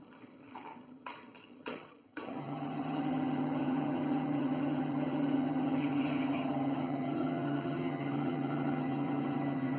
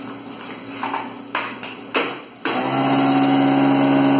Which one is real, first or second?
second